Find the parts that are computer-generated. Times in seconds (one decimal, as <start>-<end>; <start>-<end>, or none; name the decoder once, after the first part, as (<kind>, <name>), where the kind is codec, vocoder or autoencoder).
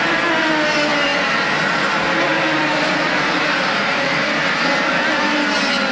2.3-4.3 (vocoder, BigVGAN v2)